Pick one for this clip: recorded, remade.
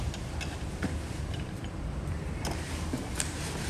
remade